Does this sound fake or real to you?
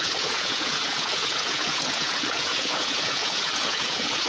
fake